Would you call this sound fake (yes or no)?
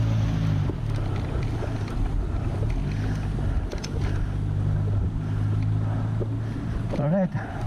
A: no